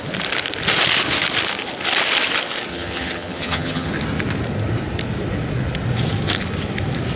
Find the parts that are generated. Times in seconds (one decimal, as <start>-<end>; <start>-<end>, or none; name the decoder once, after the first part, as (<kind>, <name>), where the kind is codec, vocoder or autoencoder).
2.7-3.9 (vocoder, HiFi-GAN)

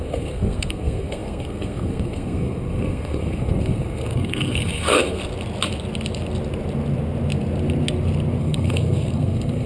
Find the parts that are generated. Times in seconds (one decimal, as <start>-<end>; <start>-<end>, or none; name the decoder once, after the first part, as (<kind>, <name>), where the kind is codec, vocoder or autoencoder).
0.0-5.2 (codec, SNAC); 8.4-9.7

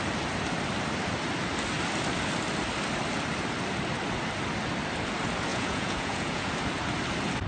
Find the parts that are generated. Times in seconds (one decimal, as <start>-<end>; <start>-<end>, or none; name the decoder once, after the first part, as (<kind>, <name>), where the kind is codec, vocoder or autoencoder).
5.5-6.5 (vocoder, Vocos)

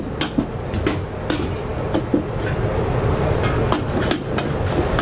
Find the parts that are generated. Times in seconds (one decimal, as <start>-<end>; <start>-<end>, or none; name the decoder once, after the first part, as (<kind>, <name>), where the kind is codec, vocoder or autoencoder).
none